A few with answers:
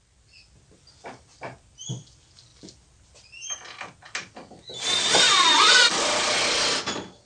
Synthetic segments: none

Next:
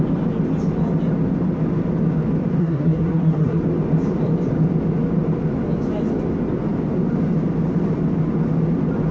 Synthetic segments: 2.6-3.6 (codec, SNAC)

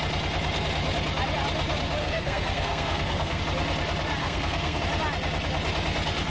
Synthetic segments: 2.0-3.4 (codec, SNAC); 4.2-4.8

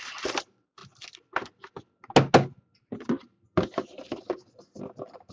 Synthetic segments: none

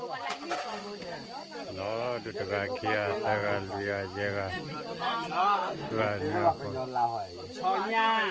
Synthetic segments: 5.4-6.0 (codec, SNAC)

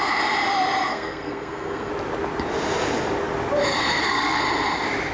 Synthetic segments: 0.9-1.9 (codec, SNAC); 3.7-4.4